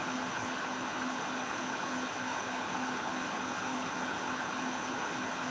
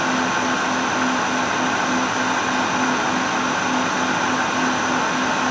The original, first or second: second